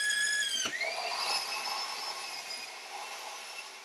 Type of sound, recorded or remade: recorded